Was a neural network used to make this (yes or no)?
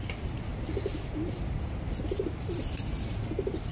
no